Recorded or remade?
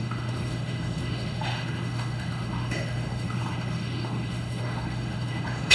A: remade